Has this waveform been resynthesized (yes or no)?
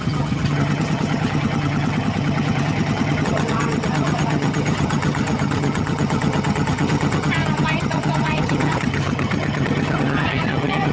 yes